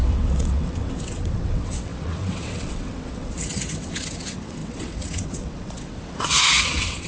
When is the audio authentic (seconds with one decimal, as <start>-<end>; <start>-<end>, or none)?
none